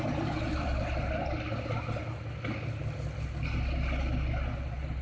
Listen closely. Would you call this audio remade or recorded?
recorded